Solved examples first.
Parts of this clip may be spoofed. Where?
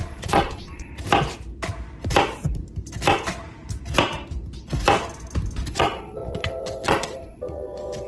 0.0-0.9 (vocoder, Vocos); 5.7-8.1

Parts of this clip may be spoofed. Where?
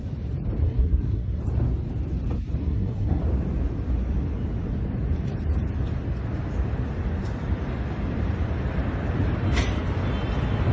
0.6-1.4 (codec, SNAC); 2.6-3.2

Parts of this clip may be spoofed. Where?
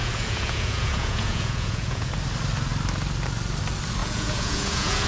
0.0-2.1 (vocoder, Vocos); 4.0-5.1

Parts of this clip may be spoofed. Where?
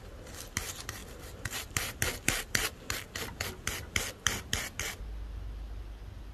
none